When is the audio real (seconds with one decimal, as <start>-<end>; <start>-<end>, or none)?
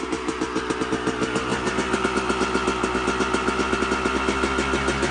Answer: 0.0-5.1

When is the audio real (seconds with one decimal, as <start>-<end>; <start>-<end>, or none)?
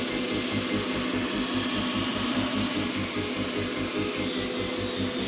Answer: 0.0-5.3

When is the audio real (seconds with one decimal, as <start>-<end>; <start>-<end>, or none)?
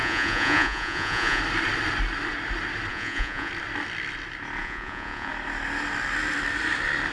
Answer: 1.4-2.9; 3.5-4.6; 5.3-7.1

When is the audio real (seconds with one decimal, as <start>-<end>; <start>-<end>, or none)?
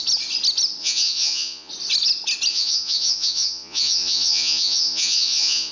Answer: 0.0-0.8; 1.7-2.5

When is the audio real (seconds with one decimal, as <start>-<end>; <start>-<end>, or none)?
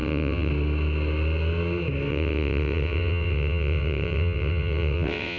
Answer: 0.5-2.1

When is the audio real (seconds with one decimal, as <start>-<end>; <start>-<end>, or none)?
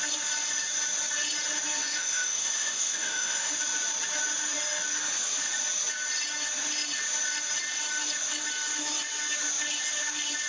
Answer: 0.0-1.8; 3.5-10.5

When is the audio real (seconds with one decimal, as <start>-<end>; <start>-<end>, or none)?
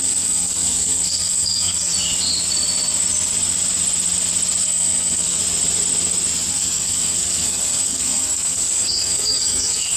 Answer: 1.9-4.6; 5.4-6.5